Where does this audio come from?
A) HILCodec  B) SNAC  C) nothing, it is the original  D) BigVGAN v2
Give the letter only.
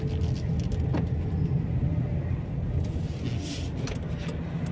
C